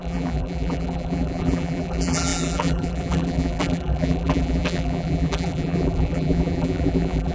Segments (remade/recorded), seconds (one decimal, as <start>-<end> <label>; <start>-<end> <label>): 0.0-7.3 remade